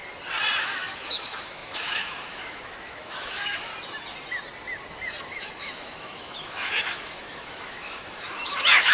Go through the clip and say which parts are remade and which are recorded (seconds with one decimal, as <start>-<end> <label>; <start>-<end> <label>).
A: 0.0-0.6 recorded; 0.6-3.7 remade; 3.7-5.2 recorded; 5.2-8.9 remade